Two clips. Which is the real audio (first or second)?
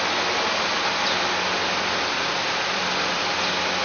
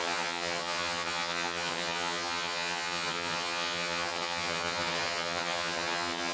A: first